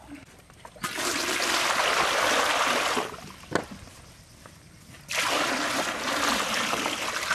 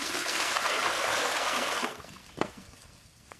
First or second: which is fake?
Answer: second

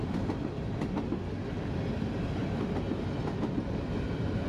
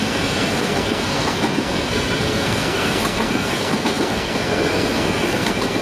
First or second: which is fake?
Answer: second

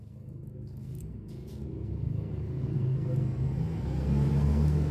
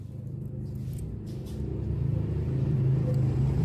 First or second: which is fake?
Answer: first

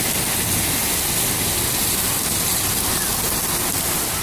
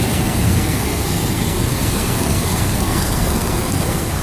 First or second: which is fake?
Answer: second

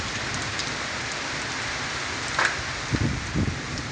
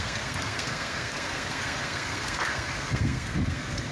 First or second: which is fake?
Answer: second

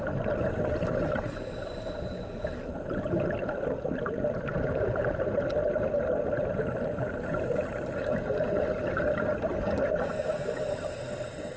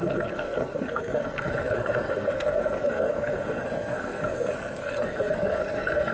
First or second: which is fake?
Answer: second